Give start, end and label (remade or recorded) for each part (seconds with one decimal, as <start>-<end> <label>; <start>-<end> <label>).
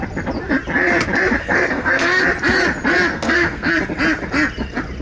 0.0-1.4 recorded; 1.4-2.2 remade; 2.2-3.1 recorded; 3.1-3.7 remade; 3.7-5.0 recorded